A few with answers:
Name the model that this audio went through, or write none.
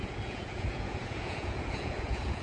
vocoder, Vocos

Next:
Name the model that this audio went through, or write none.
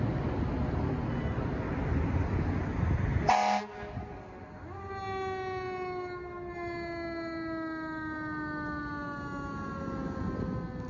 none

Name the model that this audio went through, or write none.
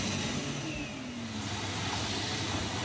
none